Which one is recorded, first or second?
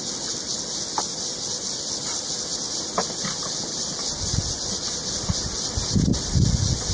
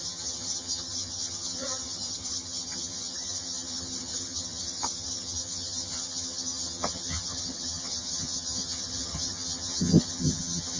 first